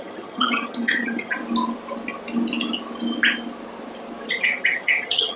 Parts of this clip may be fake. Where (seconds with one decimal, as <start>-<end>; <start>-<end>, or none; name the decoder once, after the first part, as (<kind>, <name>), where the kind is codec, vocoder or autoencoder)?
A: 0.0-1.4 (vocoder, HiFi-GAN); 4.3-5.4